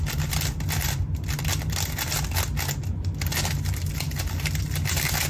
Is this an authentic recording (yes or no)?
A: yes